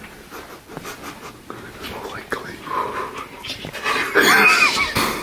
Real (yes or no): yes